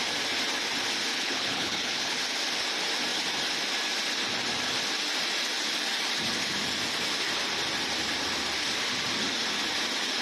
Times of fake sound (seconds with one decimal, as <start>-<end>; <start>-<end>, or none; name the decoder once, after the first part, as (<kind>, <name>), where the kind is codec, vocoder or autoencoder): 1.1-2.2 (codec, HILCodec)